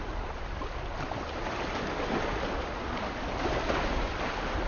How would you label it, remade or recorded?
recorded